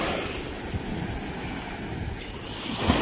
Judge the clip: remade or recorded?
recorded